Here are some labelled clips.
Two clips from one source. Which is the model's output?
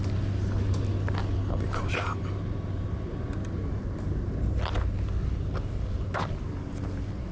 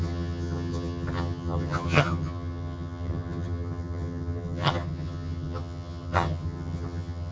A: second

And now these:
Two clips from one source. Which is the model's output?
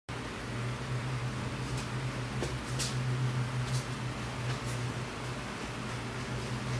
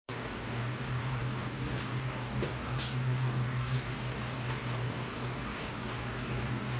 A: second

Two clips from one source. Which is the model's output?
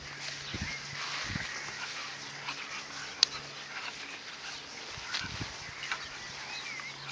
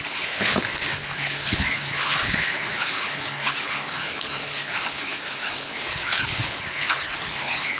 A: second